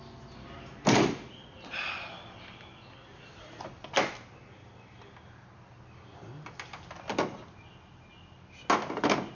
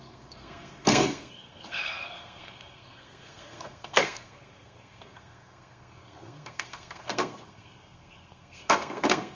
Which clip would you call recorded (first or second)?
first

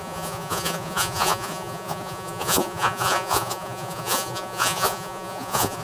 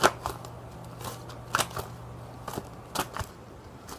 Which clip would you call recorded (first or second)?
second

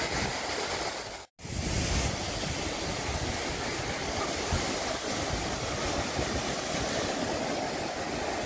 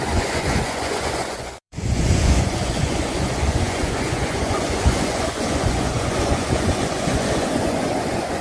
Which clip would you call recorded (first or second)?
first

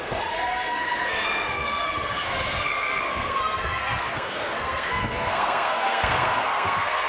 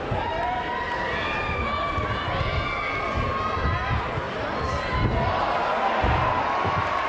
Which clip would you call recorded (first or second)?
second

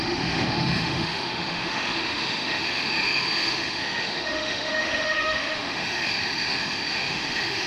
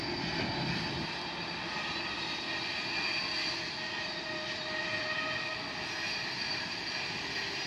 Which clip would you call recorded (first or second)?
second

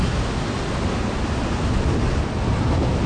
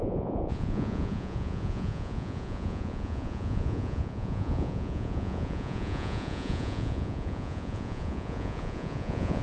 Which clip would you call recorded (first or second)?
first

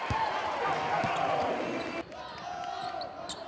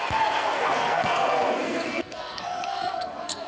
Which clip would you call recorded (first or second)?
first